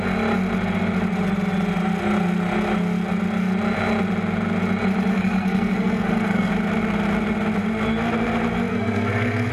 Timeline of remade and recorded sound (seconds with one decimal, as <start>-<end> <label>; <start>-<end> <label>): 0.0-5.1 recorded; 5.1-6.5 remade; 6.5-8.7 recorded; 8.7-9.5 remade